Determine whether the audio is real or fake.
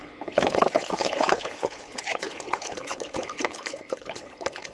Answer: fake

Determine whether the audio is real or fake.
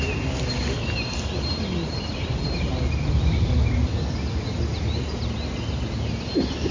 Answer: real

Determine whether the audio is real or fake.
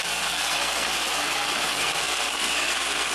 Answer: fake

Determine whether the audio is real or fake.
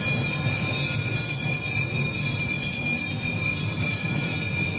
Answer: fake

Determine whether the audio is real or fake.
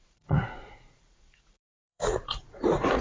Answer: fake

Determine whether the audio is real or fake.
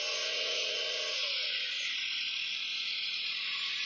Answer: fake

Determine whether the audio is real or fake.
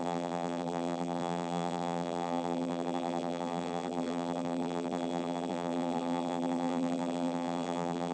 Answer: fake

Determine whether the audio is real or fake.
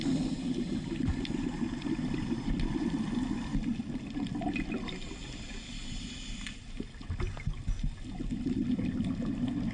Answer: real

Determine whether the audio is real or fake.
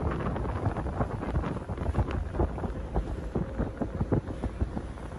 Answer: real